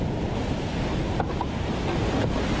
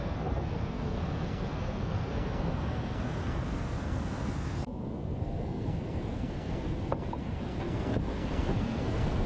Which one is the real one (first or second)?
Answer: first